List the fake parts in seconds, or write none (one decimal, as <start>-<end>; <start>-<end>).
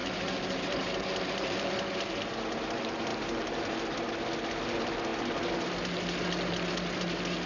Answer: 0.0-1.7; 3.1-3.7